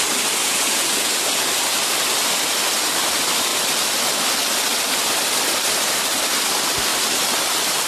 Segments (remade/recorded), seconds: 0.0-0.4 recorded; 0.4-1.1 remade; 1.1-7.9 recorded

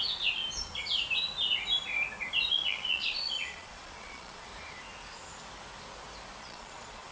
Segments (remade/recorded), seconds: 0.0-0.4 remade; 0.4-2.5 recorded; 2.5-4.5 remade; 4.5-6.4 recorded; 6.4-7.1 remade

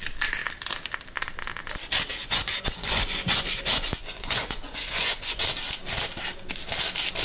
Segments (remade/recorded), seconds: 0.0-2.1 recorded; 2.1-5.4 remade; 5.4-7.2 recorded

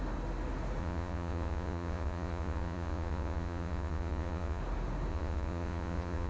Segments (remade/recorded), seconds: 0.0-0.8 recorded; 0.8-4.6 remade; 4.6-5.1 recorded; 5.1-6.3 remade